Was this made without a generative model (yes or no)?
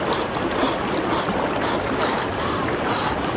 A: yes